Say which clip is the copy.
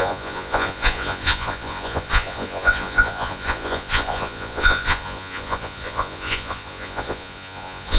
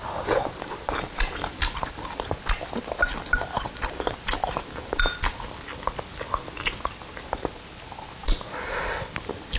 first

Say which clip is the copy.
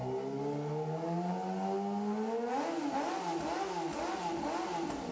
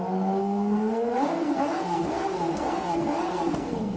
second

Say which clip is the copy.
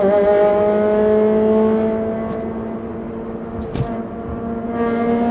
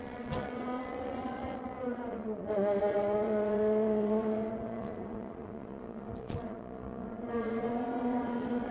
second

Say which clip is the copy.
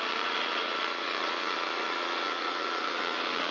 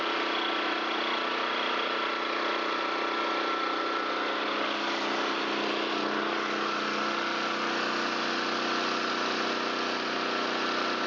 first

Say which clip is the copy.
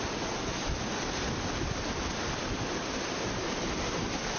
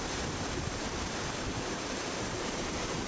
second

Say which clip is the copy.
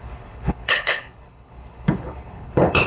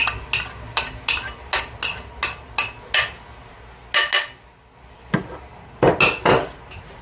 first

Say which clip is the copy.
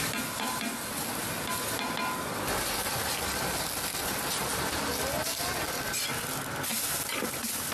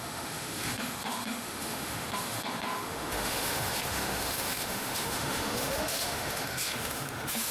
second